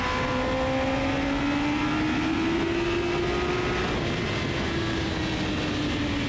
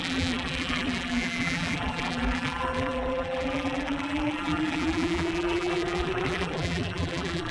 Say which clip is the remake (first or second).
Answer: second